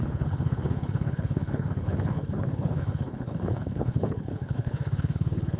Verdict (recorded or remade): remade